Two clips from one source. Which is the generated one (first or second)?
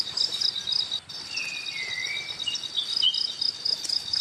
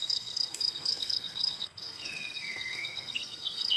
second